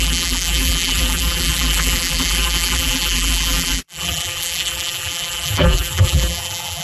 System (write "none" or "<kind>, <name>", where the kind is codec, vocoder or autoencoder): vocoder, BigVGAN v2